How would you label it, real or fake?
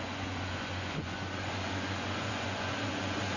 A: fake